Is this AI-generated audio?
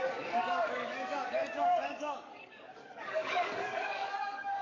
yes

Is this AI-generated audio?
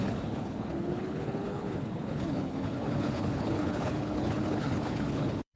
yes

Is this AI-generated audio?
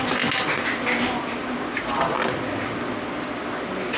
no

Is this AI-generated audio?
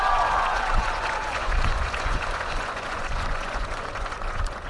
yes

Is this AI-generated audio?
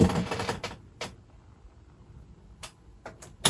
no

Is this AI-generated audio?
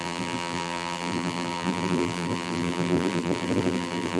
yes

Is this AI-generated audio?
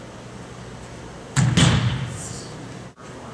no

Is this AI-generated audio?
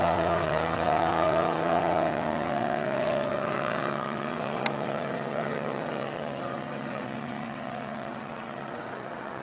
yes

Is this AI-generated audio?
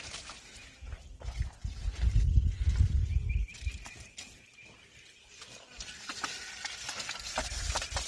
no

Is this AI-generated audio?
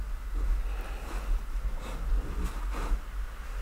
no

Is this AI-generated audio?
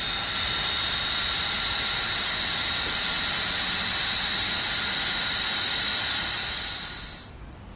no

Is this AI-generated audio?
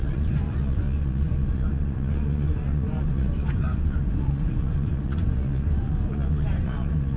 yes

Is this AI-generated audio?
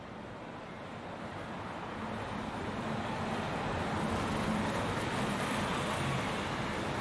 yes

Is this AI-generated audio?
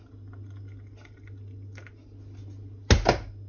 no